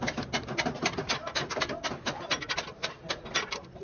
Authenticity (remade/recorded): recorded